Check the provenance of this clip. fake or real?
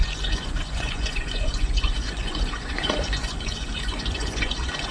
fake